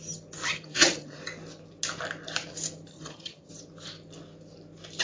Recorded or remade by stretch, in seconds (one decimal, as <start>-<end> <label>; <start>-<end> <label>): 0.0-0.5 recorded; 0.5-1.2 remade; 1.2-2.9 recorded; 2.9-3.5 remade; 3.5-5.0 recorded